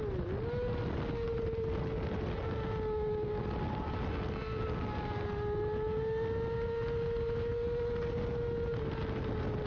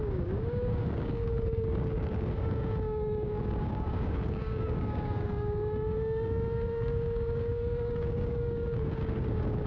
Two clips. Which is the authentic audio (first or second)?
first